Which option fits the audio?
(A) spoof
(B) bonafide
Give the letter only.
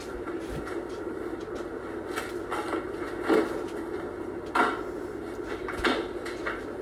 B